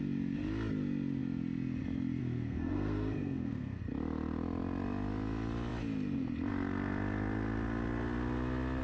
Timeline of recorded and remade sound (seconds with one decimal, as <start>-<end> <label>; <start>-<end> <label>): 0.0-2.2 recorded; 2.2-3.8 remade; 3.8-8.8 recorded